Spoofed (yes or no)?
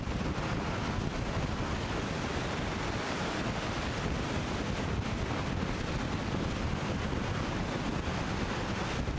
no